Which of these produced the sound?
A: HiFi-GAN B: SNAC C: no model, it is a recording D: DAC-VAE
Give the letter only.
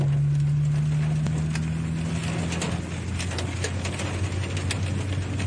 C